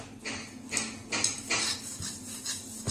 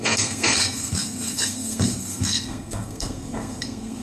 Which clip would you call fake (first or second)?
second